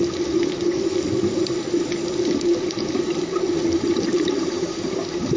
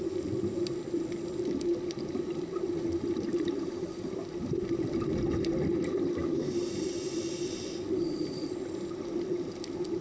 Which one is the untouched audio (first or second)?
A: second